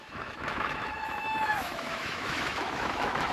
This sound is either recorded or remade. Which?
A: remade